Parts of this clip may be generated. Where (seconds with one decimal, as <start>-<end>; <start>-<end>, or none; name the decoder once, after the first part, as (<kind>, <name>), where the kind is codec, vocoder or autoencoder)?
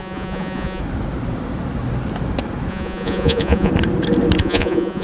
0.0-0.8 (vocoder, Vocos); 2.7-3.7; 4.4-5.0